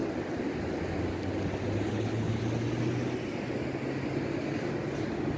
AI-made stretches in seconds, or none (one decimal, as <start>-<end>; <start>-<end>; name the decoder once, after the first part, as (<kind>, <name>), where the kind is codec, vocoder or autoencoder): 1.9-2.4 (codec, HILCodec)